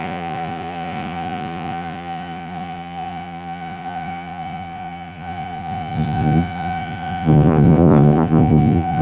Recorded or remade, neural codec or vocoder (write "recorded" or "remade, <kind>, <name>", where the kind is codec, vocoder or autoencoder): remade, vocoder, Vocos